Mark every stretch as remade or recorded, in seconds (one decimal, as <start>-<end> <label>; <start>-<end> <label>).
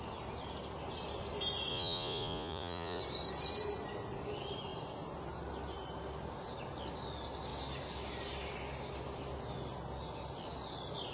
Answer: 0.0-1.7 recorded; 1.7-3.0 remade; 3.0-11.1 recorded